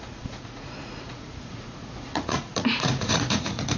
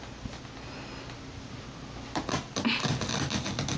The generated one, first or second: first